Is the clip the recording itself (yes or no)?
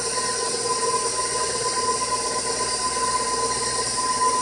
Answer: yes